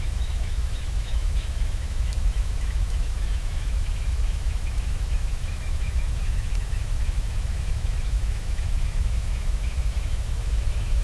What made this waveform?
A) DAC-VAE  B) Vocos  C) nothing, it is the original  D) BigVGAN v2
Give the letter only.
A